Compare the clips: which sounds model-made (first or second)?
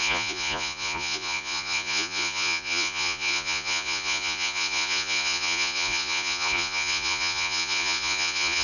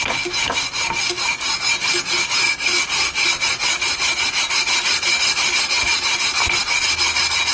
first